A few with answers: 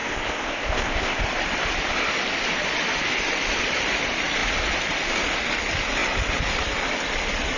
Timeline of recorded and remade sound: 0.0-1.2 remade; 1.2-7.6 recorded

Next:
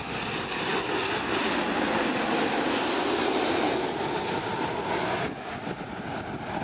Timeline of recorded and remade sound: 0.0-6.6 recorded

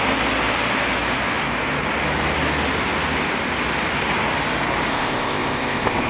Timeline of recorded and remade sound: 0.0-4.9 recorded; 4.9-6.1 remade

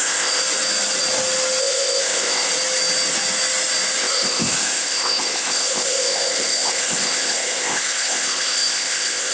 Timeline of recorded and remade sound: 0.0-0.4 remade; 0.4-1.6 recorded; 1.6-2.5 remade; 2.5-4.0 recorded; 4.0-9.3 remade

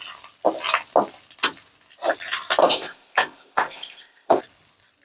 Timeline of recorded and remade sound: 0.0-2.6 recorded; 2.6-4.4 remade; 4.4-5.0 recorded

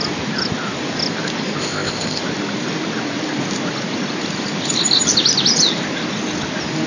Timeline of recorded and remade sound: 0.0-1.6 recorded; 1.6-2.2 remade; 2.2-6.9 recorded